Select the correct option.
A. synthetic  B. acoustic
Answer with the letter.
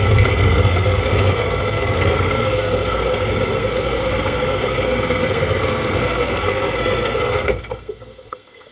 A